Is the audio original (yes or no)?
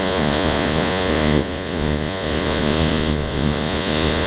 no